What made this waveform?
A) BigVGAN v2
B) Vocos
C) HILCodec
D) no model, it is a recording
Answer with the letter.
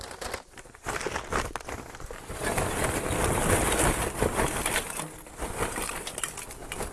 A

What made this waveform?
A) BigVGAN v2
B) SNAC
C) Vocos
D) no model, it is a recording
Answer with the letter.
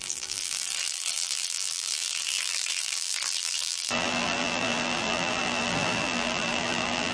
A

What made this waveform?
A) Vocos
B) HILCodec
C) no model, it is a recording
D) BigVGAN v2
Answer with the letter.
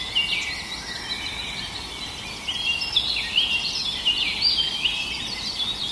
C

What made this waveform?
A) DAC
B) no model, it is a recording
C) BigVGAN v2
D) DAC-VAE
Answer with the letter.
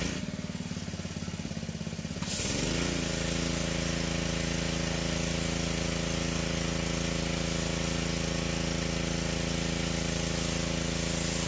B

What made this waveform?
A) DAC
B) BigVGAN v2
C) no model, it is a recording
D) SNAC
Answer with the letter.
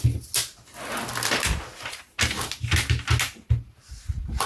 C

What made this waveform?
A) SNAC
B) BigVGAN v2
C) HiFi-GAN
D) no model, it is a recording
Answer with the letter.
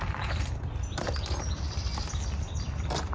B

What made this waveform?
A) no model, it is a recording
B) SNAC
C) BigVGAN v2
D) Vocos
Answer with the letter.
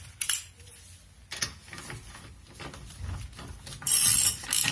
A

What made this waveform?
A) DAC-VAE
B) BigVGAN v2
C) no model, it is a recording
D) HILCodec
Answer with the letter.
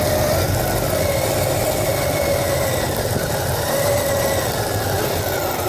C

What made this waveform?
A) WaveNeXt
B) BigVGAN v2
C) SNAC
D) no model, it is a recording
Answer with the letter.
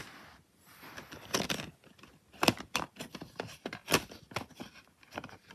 D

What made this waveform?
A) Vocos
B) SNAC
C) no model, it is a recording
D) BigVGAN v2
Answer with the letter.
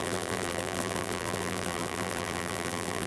D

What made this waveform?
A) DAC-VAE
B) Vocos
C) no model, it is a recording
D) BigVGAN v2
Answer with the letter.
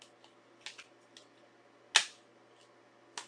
C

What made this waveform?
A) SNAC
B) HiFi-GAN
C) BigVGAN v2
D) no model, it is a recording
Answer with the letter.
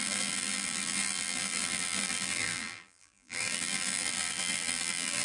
C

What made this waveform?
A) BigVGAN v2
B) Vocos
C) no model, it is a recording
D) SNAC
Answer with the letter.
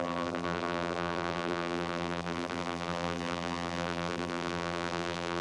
A